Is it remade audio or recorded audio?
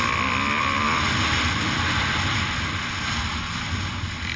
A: recorded